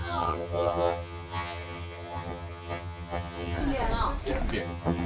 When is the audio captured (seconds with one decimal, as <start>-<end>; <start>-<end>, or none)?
3.6-4.6